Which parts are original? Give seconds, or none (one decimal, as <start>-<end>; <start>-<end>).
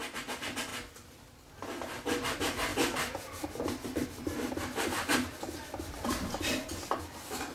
0.0-7.5